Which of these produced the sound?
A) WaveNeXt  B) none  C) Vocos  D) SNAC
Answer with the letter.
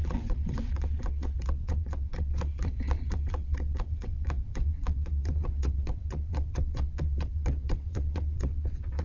A